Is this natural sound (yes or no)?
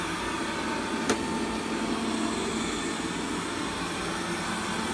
yes